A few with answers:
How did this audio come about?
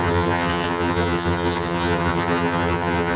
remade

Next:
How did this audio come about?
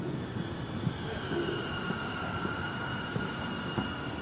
recorded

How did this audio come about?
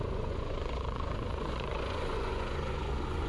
remade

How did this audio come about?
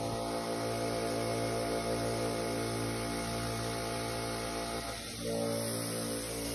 recorded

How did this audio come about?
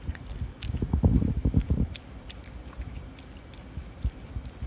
recorded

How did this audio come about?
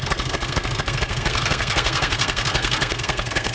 remade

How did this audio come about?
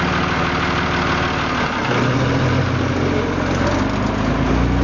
recorded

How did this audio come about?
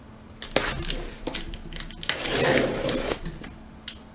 recorded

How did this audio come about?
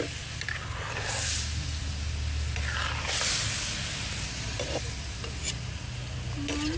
recorded